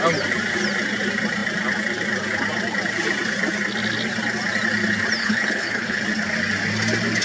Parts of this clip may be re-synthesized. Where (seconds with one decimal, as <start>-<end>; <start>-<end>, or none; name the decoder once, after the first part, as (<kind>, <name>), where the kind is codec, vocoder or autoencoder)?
5.2-6.0 (codec, HILCodec)